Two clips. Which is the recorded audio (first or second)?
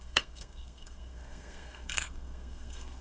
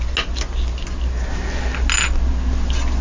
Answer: second